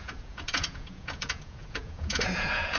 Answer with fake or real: fake